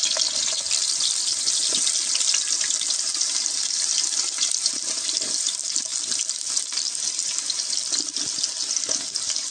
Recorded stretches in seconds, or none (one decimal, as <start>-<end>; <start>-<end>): 0.0-9.5

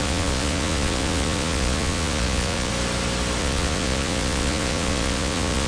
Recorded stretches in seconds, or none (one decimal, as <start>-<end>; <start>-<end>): 2.7-3.4

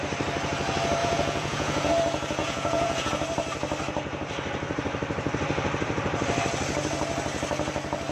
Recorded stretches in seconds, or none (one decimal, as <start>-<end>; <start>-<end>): 0.0-1.0; 1.9-2.4; 3.1-8.1

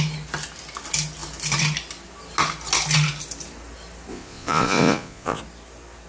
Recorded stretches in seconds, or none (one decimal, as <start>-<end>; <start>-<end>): 0.0-4.1; 5.4-6.1

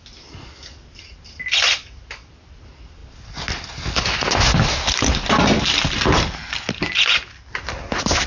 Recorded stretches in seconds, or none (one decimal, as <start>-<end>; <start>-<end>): 0.0-8.3

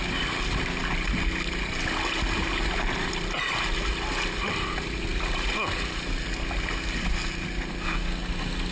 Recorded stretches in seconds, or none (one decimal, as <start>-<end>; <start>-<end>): 0.0-8.7

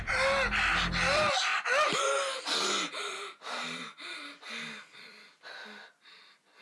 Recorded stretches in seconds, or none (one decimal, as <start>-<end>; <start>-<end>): 0.0-6.6

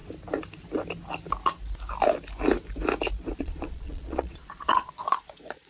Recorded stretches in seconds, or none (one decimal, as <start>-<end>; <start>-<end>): 0.0-3.4